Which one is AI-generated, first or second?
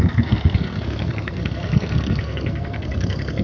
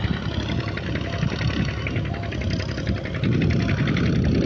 first